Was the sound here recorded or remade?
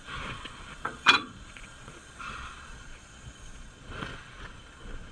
remade